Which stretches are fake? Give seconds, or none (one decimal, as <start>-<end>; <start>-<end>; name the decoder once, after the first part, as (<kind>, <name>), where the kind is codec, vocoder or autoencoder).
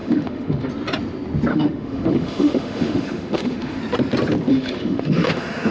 0.0-0.7 (autoencoder, DAC-VAE); 1.5-3.8; 4.5-5.7